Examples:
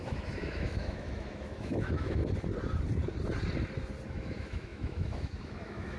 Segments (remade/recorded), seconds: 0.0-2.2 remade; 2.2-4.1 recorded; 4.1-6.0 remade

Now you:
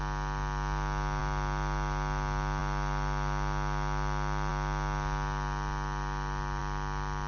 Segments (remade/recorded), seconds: 0.0-7.3 recorded

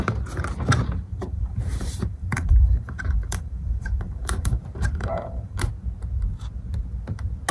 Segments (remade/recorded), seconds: 0.0-1.1 recorded; 1.1-5.6 remade; 5.6-7.5 recorded

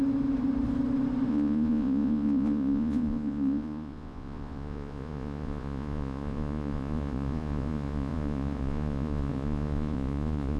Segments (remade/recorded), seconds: 0.0-1.3 recorded; 1.3-10.6 remade

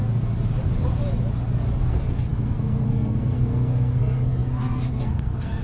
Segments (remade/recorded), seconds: 0.0-1.8 recorded; 1.8-5.6 remade

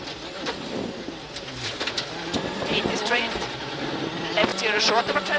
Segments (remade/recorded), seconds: 0.0-4.5 remade; 4.5-5.0 recorded; 5.0-5.4 remade

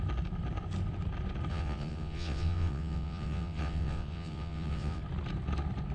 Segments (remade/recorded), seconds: 0.0-1.5 recorded; 1.5-5.0 remade; 5.0-5.9 recorded

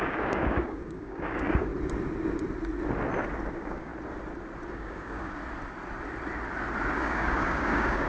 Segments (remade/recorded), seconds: 0.0-1.7 remade; 1.7-3.5 recorded; 3.5-3.9 remade; 3.9-4.7 recorded; 4.7-5.4 remade; 5.4-6.9 recorded; 6.9-8.1 remade